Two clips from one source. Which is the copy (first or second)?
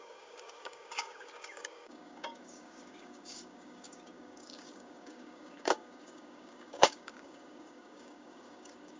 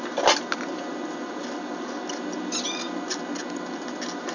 first